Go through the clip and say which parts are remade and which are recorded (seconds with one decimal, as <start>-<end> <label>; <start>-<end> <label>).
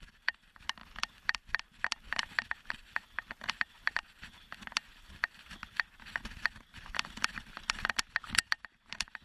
0.0-9.2 recorded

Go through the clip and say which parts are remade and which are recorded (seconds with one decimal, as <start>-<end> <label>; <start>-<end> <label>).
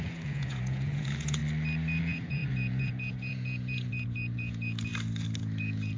0.0-1.4 remade; 1.4-2.0 recorded; 2.0-4.9 remade; 4.9-5.4 recorded; 5.4-6.0 remade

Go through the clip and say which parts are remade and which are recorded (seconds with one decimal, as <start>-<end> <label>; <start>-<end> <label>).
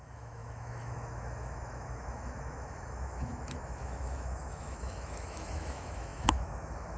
0.0-7.0 remade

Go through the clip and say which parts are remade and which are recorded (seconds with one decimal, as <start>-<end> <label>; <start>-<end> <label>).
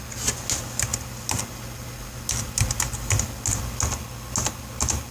0.0-5.1 recorded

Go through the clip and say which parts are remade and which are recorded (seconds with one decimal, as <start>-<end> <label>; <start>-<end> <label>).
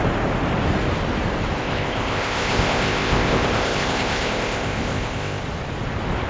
0.0-1.6 recorded; 1.6-5.4 remade; 5.4-6.3 recorded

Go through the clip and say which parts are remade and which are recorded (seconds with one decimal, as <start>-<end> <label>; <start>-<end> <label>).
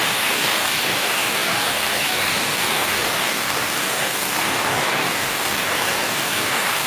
0.0-6.9 remade